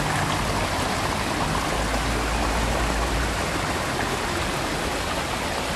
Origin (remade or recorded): recorded